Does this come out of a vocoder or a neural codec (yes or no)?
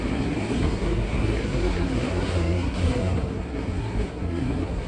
yes